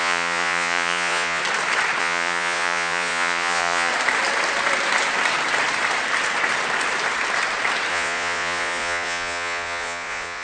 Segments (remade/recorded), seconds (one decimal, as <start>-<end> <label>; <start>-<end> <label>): 0.0-1.4 remade; 1.4-2.0 recorded; 2.0-3.9 remade; 3.9-7.9 recorded; 7.9-10.4 remade